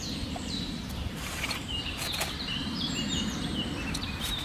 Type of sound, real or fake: fake